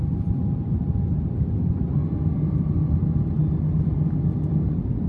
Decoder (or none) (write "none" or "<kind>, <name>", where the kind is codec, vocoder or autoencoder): none